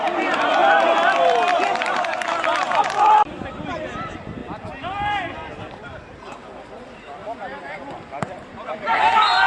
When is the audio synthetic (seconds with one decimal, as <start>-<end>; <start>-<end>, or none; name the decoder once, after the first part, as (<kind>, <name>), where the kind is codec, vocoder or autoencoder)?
0.0-4.4 (vocoder, BigVGAN v2); 6.6-9.5